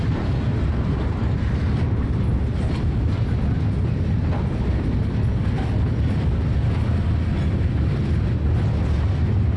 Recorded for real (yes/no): yes